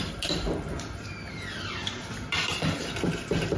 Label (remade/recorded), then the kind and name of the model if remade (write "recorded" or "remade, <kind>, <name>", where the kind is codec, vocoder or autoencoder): remade, vocoder, BigVGAN v2